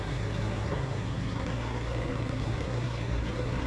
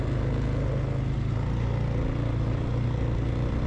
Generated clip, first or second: first